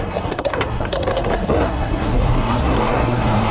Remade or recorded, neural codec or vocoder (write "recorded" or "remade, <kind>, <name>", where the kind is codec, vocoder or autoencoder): remade, codec, SNAC